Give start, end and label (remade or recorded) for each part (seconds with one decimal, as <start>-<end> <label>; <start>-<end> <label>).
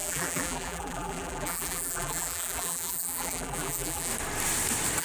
0.0-4.1 remade; 4.1-5.0 recorded